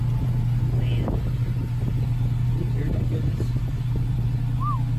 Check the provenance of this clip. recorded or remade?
recorded